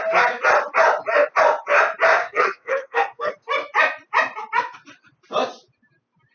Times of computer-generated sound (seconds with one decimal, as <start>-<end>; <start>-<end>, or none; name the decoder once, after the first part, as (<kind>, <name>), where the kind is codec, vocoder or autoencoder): 2.2-3.3 (codec, SNAC)